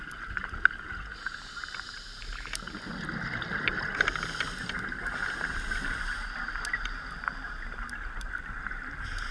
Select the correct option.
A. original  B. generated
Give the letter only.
A